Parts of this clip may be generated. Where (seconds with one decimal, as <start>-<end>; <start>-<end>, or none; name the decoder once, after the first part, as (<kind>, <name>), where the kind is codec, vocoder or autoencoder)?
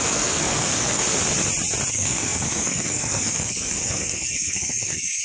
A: 0.0-1.0 (codec, SNAC); 1.9-5.2